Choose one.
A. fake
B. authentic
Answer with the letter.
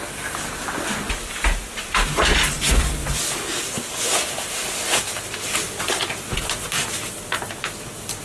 B